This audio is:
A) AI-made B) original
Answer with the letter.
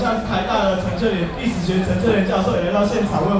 B